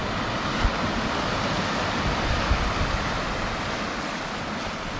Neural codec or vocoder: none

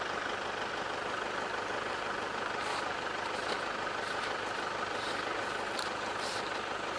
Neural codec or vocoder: vocoder, BigVGAN v2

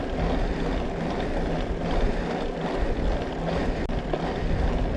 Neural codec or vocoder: none